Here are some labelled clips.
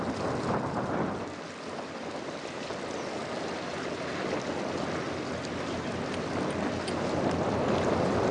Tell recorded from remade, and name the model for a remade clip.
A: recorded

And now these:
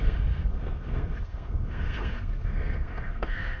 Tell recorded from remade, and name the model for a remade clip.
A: remade, codec, SNAC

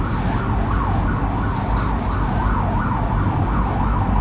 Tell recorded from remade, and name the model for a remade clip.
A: recorded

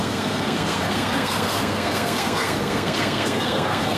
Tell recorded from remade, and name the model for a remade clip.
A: remade, codec, SNAC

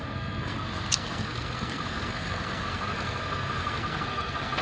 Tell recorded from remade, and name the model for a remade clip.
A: remade, codec, SNAC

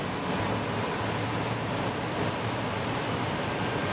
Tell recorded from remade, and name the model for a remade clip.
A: recorded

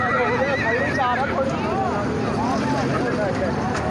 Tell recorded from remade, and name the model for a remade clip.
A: recorded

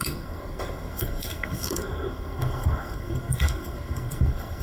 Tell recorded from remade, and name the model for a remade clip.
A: remade, codec, SNAC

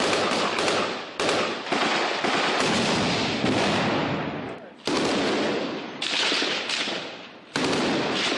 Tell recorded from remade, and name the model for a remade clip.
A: recorded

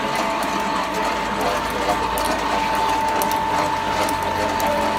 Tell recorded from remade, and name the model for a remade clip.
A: recorded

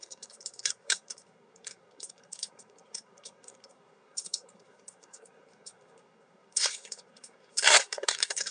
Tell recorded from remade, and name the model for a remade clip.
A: remade, codec, SNAC